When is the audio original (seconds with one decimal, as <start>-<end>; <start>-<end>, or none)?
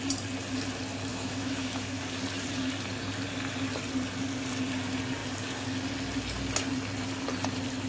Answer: 0.0-1.1; 2.0-7.9